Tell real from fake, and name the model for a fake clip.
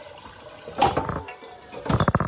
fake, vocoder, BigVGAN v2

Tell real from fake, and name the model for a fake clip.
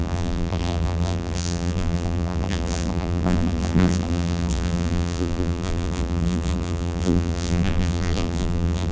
fake, vocoder, BigVGAN v2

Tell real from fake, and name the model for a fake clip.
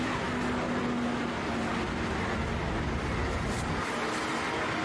real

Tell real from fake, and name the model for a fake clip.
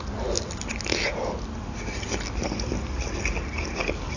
real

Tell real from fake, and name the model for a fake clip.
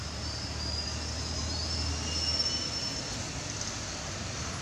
real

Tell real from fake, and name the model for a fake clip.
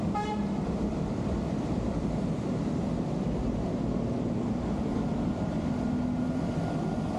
fake, vocoder, BigVGAN v2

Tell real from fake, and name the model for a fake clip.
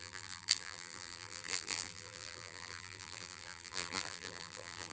fake, vocoder, BigVGAN v2